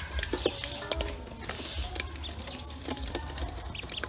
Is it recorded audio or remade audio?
recorded